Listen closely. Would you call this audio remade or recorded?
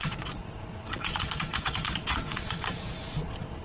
remade